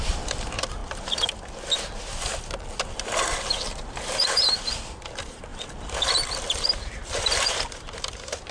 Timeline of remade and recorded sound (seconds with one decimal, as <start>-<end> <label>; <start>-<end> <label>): 0.0-0.8 remade; 0.8-3.9 recorded; 3.9-5.5 remade; 5.5-6.9 recorded; 6.9-8.5 remade